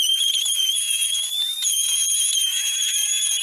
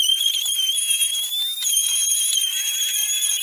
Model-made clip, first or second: first